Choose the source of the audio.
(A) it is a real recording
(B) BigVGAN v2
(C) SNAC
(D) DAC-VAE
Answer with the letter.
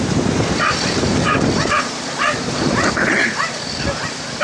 B